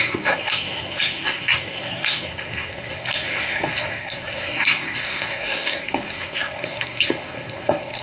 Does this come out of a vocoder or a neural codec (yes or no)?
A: yes